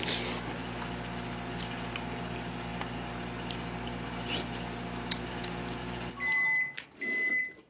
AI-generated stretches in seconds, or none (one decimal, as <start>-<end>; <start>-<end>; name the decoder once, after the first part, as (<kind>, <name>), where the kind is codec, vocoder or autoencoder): none